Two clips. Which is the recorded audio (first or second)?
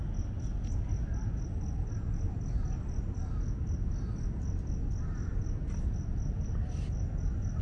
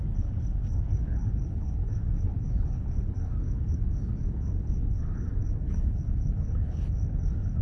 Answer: first